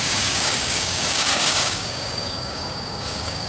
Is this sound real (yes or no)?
no